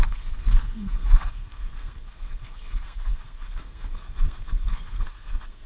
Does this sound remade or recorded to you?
remade